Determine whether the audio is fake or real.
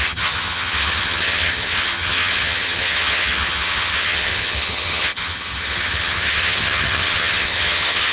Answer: fake